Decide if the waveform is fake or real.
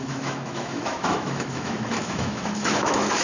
fake